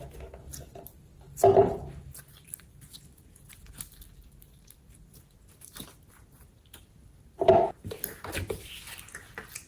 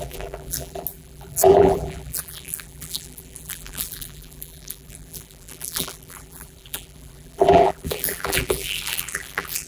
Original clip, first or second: first